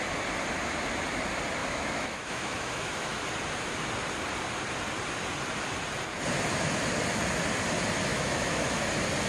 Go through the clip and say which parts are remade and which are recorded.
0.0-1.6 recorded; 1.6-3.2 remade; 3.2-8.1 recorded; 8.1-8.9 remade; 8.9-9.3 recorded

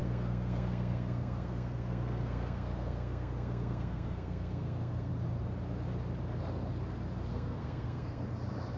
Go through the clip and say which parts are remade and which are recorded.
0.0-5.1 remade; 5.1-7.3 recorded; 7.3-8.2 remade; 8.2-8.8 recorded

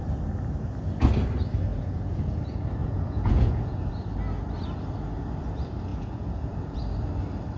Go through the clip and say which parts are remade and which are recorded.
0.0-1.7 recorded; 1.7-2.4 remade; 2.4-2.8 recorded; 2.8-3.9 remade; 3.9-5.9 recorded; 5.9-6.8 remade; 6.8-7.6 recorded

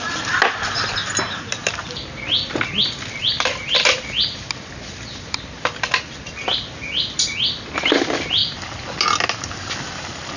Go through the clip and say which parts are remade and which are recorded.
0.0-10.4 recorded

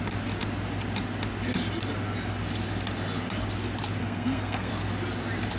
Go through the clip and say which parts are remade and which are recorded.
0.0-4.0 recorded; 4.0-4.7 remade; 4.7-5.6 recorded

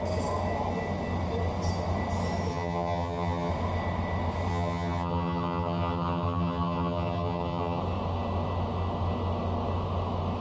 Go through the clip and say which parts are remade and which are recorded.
0.0-2.5 recorded; 2.5-3.5 remade; 3.5-4.5 recorded; 4.5-7.8 remade; 7.8-10.4 recorded